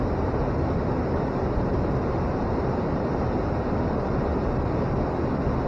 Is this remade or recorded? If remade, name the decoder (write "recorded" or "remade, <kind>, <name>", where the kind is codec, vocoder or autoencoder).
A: recorded